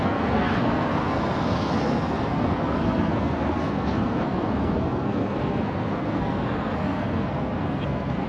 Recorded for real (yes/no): no